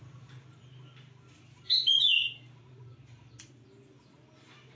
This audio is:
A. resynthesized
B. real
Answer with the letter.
B